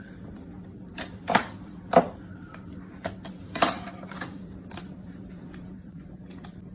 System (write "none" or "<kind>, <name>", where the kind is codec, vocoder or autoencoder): vocoder, BigVGAN v2